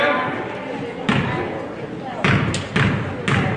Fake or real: real